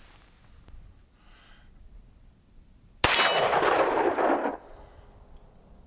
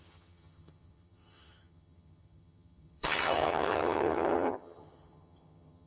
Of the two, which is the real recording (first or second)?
first